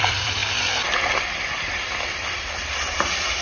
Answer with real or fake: fake